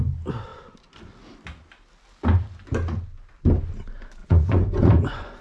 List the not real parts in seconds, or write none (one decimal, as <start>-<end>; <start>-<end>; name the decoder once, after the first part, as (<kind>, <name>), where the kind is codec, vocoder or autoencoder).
4.2-5.4 (vocoder, Vocos)